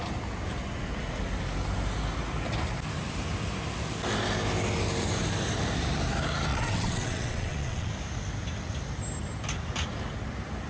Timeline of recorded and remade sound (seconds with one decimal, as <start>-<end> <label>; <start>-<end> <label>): 0.0-6.5 recorded; 6.5-7.9 remade; 7.9-10.7 recorded